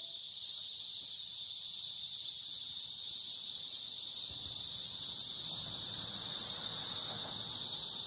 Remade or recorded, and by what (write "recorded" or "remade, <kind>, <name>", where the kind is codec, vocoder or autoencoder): recorded